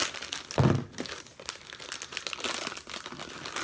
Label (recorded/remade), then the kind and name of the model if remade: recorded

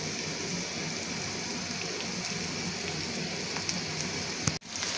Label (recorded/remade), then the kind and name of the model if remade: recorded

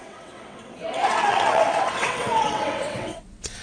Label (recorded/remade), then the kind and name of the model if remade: remade, vocoder, WaveNeXt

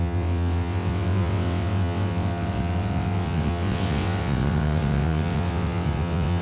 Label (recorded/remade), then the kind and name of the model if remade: remade, vocoder, WaveNeXt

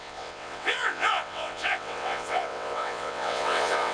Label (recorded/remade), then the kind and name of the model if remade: remade, vocoder, WaveNeXt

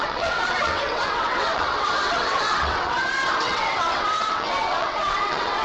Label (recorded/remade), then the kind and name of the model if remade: remade, vocoder, WaveNeXt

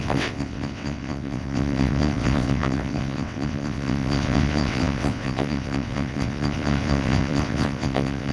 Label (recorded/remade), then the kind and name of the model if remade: remade, vocoder, WaveNeXt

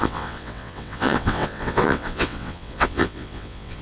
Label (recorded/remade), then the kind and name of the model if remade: remade, vocoder, WaveNeXt